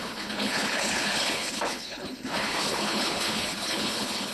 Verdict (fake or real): fake